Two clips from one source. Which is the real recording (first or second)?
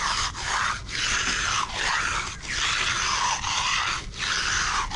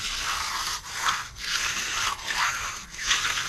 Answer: first